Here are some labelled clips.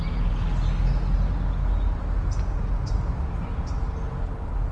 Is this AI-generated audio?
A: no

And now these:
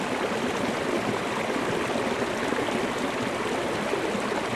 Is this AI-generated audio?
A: no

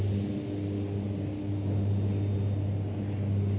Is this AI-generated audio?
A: no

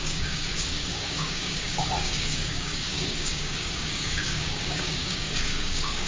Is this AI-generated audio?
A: yes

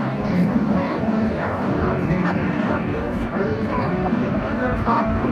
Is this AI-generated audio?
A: yes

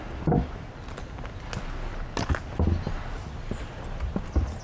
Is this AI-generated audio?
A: no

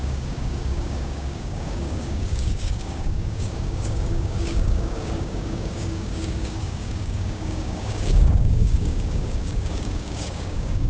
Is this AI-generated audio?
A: yes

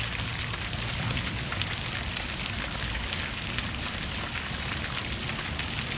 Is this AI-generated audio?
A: no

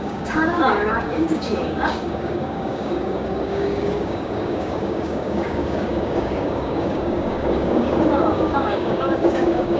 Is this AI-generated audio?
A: yes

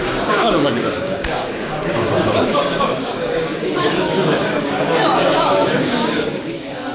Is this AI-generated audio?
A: yes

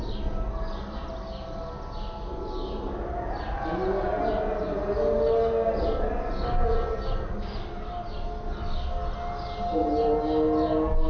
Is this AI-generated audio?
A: no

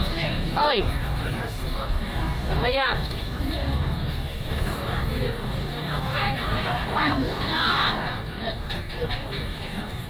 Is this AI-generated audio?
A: yes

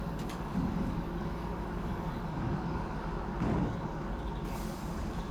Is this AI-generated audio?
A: yes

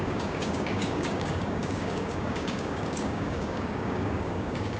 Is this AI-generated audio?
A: yes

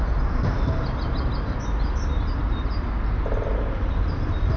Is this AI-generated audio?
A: no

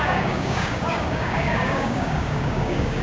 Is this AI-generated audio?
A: yes